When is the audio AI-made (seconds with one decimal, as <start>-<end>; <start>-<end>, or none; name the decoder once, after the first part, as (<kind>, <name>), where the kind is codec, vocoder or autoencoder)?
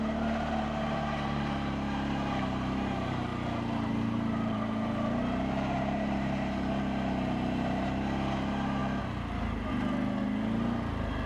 0.0-3.3 (vocoder, BigVGAN v2); 3.9-8.8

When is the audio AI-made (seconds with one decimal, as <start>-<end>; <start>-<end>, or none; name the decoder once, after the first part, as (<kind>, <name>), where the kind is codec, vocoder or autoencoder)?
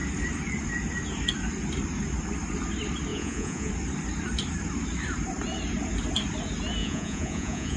3.1-3.7 (vocoder, Vocos); 6.8-7.8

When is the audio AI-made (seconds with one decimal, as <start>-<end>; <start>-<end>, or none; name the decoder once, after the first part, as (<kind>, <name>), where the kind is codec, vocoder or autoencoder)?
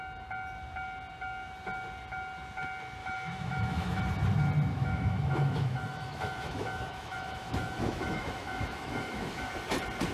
3.0-4.0 (autoencoder, DAC-VAE); 4.8-9.5